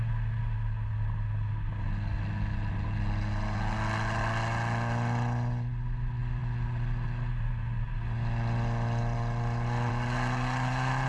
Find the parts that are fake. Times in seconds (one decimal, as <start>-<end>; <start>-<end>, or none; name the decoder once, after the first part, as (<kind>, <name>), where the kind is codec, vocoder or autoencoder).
none